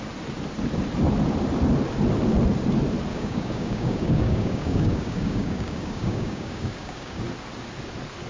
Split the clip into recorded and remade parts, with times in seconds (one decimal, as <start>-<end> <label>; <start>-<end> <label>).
0.0-3.1 recorded; 3.1-7.2 remade; 7.2-8.3 recorded